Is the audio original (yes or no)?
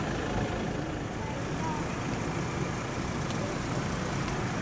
yes